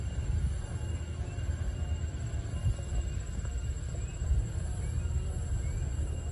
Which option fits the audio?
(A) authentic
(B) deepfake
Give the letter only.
A